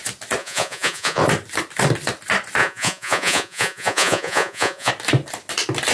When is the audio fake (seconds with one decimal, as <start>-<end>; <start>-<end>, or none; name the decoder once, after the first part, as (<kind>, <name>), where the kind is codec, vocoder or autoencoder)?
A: 0.4-1.2 (vocoder, Vocos); 2.6-4.9

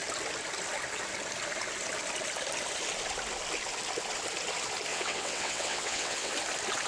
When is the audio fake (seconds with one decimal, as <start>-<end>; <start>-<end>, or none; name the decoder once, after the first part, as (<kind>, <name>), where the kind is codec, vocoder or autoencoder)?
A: 4.9-6.3 (vocoder, WaveNeXt)

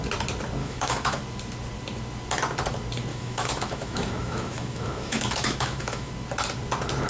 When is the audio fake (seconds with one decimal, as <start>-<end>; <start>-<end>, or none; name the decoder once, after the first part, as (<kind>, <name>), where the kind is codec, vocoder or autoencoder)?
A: 0.6-1.2 (autoencoder, DAC-VAE); 3.1-6.1

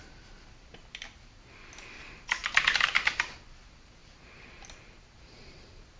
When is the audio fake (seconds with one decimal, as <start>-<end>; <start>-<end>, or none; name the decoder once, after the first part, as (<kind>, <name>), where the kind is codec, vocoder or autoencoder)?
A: 2.4-2.9 (vocoder, BigVGAN v2); 4.0-5.6

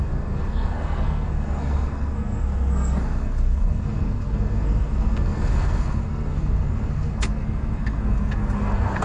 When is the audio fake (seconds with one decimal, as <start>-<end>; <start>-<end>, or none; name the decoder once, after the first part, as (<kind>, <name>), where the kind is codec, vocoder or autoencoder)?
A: 0.0-9.0 (codec, SNAC)

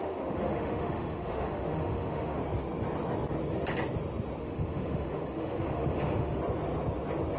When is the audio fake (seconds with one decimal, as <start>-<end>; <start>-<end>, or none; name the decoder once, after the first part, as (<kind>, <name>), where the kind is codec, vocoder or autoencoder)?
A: 0.0-2.4 (autoencoder, DAC-VAE); 4.4-6.4